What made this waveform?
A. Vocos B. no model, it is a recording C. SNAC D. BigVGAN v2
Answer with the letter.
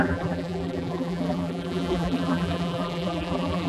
D